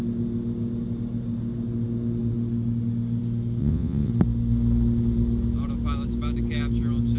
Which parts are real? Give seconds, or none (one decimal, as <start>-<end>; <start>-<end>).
0.0-3.6; 4.1-7.2